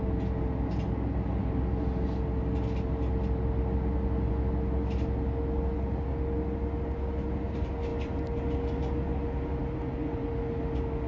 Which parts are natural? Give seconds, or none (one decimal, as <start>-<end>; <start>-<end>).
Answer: 0.0-11.1